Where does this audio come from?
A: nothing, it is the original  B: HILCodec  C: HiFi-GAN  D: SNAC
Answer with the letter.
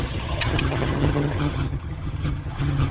C